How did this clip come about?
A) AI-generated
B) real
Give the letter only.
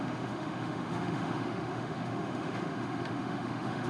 A